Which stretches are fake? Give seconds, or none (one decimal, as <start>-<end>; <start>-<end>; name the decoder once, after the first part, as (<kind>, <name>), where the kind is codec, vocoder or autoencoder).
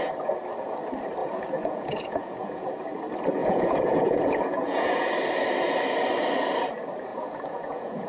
1.2-2.8 (vocoder, Vocos); 3.4-5.1; 7.1-8.1